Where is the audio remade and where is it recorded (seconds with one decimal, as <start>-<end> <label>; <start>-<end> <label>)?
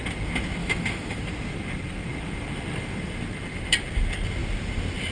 0.0-0.6 recorded; 0.6-1.2 remade; 1.2-5.1 recorded